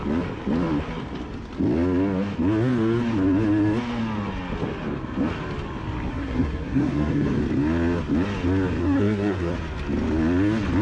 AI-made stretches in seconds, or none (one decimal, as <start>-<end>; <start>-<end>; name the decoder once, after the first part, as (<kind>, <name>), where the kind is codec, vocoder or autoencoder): 6.1-7.4 (codec, SNAC); 8.8-9.5